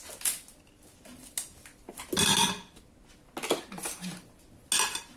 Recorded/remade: recorded